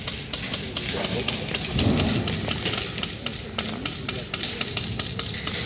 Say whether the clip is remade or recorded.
recorded